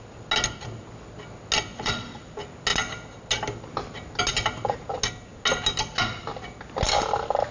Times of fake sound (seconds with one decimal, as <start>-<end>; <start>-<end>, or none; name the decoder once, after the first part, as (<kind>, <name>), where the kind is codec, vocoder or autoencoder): 1.7-2.2 (vocoder, Vocos)